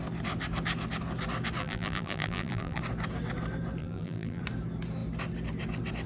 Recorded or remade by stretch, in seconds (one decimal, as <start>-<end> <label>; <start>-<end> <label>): 0.0-1.6 recorded; 1.6-2.8 remade; 2.8-3.8 recorded; 3.8-4.4 remade; 4.4-6.1 recorded